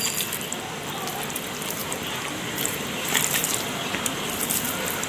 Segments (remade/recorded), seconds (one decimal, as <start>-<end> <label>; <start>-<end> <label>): 0.0-1.8 recorded; 1.8-5.1 remade